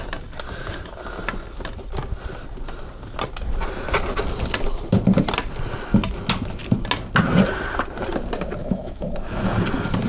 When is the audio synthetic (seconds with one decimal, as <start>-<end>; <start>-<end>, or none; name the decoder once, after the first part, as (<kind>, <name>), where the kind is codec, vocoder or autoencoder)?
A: 8.6-9.5 (autoencoder, DAC-VAE)